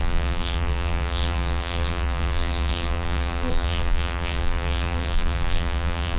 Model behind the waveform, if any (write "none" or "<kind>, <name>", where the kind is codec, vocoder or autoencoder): vocoder, BigVGAN v2